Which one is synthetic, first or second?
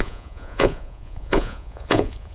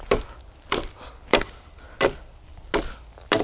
first